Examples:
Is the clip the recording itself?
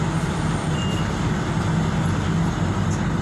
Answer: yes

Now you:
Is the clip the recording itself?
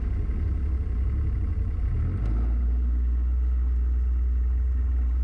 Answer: yes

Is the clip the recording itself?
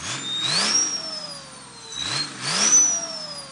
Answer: yes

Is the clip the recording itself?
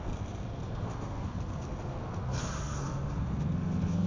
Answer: no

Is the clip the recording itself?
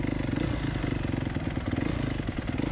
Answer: yes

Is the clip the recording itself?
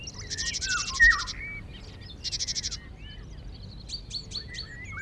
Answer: yes